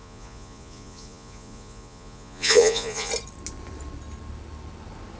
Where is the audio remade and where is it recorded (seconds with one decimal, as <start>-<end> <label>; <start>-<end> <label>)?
0.0-3.1 remade; 3.1-5.2 recorded